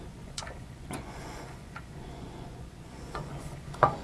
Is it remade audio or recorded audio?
remade